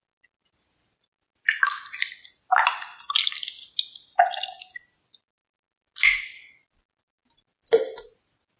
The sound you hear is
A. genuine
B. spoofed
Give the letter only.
A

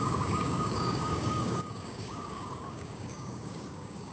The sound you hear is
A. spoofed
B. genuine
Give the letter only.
A